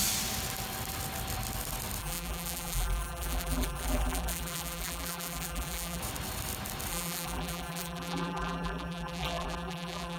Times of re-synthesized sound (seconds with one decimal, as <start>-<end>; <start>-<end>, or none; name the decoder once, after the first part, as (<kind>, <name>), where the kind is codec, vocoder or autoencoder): 2.0-6.0 (vocoder, BigVGAN v2); 6.9-10.2